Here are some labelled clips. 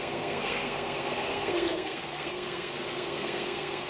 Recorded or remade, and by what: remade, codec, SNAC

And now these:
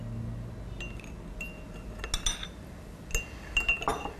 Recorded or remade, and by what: recorded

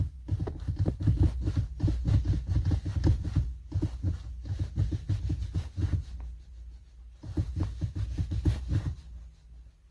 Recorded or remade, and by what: recorded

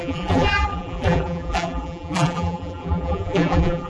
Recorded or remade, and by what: remade, vocoder, BigVGAN v2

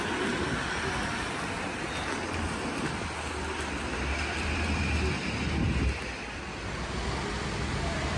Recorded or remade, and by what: recorded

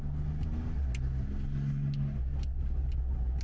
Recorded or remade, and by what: recorded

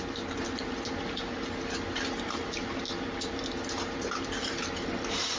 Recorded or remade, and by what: recorded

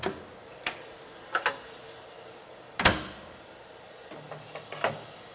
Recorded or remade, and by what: recorded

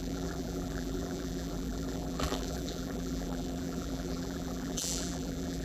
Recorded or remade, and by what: remade, vocoder, BigVGAN v2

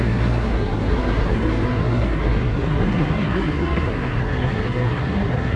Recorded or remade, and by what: remade, codec, SNAC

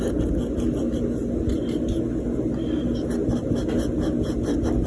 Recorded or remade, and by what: recorded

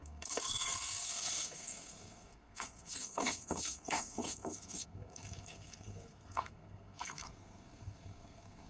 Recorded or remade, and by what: remade, codec, SNAC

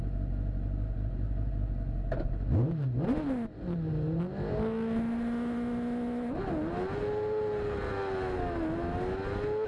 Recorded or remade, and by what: recorded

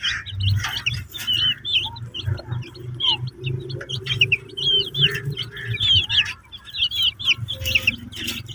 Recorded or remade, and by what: remade, vocoder, BigVGAN v2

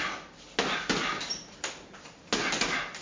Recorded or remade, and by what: recorded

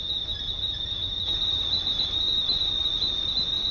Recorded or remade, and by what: recorded